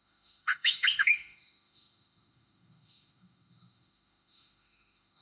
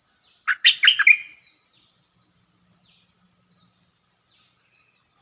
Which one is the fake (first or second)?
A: first